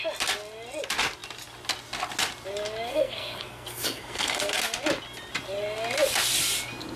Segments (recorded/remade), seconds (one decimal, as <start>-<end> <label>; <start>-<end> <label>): 0.0-2.9 recorded; 2.9-4.6 remade; 4.6-7.0 recorded